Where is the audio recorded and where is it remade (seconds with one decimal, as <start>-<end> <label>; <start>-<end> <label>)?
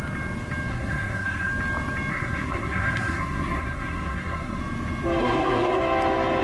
0.0-0.7 recorded; 0.7-1.5 remade; 1.5-2.1 recorded; 2.1-4.6 remade; 4.6-5.2 recorded; 5.2-5.8 remade; 5.8-6.4 recorded